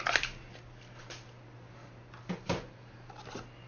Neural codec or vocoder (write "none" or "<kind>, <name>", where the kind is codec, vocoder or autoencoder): none